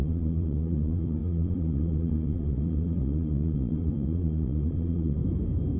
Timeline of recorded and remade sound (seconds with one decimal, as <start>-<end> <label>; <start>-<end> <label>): 0.0-5.2 remade; 5.2-5.8 recorded